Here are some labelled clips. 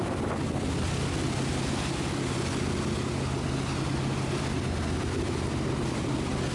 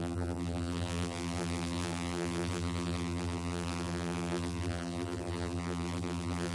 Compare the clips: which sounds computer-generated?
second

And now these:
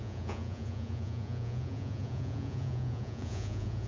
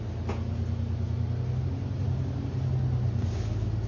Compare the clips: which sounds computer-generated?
first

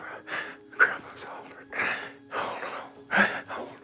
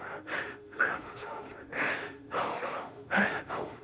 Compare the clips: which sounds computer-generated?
second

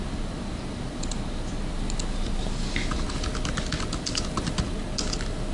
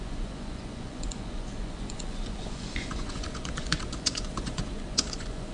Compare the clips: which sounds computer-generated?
second